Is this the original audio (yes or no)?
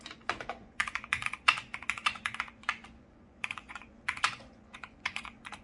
no